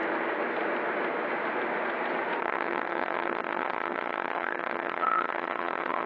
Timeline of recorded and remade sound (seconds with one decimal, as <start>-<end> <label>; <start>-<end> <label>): 0.0-2.4 recorded; 2.4-6.1 remade